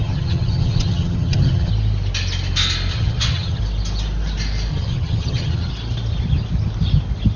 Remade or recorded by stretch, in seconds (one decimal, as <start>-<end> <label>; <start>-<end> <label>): 0.0-1.7 remade; 1.7-2.9 recorded; 2.9-3.6 remade; 3.6-4.7 recorded; 4.7-5.7 remade; 5.7-7.4 recorded